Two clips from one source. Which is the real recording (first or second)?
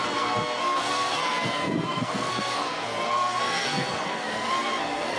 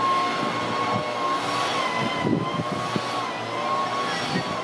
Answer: second